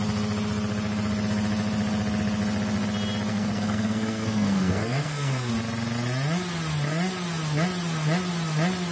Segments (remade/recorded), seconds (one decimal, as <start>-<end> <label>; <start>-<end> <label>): 0.0-3.3 recorded; 3.3-5.5 remade; 5.5-8.9 recorded